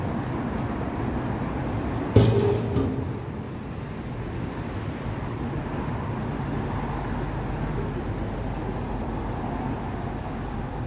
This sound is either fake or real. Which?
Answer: real